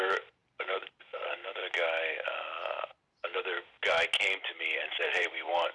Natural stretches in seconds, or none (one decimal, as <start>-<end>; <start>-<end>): 1.6-5.0

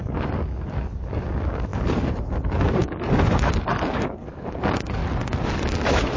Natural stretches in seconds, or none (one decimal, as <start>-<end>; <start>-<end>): 5.0-5.5

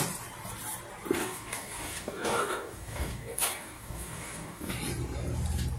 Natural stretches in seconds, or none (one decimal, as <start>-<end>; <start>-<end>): 0.0-1.2; 4.7-5.8